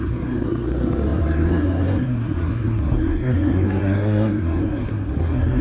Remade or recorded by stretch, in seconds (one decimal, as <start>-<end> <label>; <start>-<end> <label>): 0.0-5.6 remade